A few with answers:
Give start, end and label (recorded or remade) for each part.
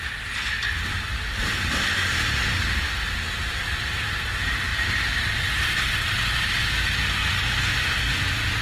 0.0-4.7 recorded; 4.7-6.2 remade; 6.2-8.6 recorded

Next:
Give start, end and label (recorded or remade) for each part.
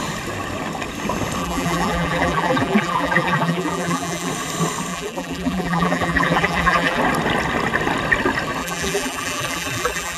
0.0-1.4 recorded; 1.4-4.3 remade; 4.3-4.9 recorded; 4.9-7.0 remade; 7.0-8.6 recorded; 8.6-10.2 remade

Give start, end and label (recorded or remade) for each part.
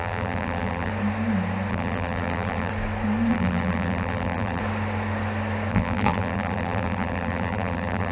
0.0-0.9 remade; 0.9-1.7 recorded; 1.7-2.7 remade; 2.7-3.3 recorded; 3.3-4.6 remade; 4.6-5.7 recorded; 5.7-8.1 remade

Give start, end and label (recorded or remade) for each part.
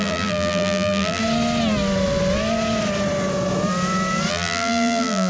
0.0-1.2 remade; 1.2-4.3 recorded; 4.3-5.3 remade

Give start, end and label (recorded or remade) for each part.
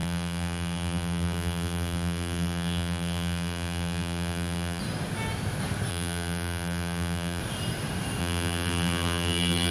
0.0-4.8 remade; 4.8-5.9 recorded; 5.9-7.4 remade; 7.4-8.2 recorded; 8.2-9.7 remade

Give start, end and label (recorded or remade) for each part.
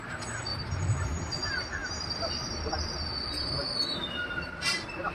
0.0-0.5 recorded; 0.5-1.0 remade; 1.0-1.8 recorded; 1.8-2.8 remade; 2.8-5.1 recorded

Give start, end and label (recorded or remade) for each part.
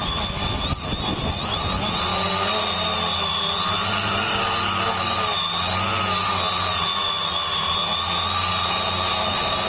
0.0-9.7 recorded